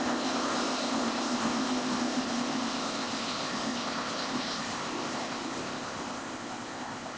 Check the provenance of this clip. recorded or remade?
remade